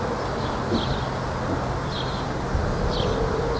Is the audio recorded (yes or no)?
yes